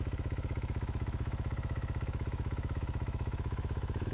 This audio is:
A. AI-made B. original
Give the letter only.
A